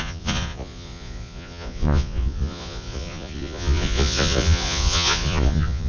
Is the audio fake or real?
fake